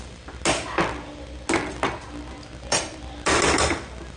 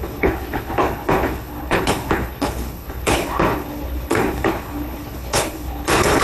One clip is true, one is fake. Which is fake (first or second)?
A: second